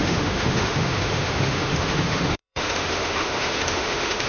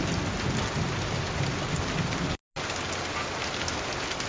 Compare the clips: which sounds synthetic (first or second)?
first